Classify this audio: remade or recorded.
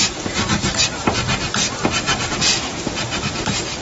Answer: remade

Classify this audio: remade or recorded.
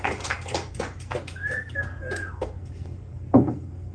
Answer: remade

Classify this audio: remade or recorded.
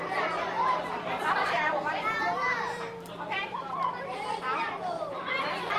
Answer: remade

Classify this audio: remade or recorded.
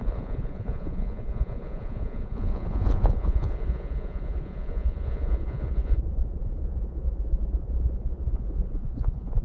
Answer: remade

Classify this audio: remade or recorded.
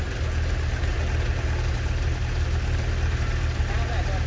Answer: recorded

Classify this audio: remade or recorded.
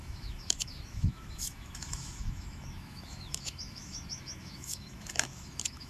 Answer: remade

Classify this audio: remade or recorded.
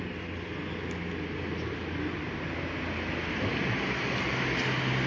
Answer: recorded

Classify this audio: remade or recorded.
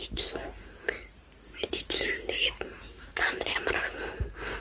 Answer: remade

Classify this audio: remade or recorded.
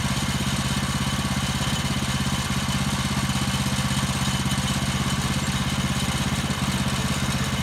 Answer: recorded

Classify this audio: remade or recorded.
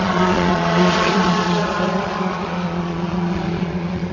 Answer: remade